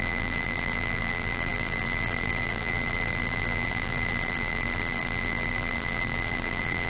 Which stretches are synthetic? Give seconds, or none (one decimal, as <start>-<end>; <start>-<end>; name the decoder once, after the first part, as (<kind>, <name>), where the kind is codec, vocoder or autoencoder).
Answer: 0.0-6.9 (vocoder, BigVGAN v2)